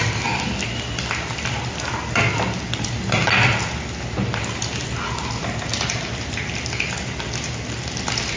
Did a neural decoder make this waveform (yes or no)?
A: no